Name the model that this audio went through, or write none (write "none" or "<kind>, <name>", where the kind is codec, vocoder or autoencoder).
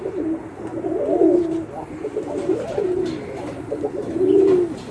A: none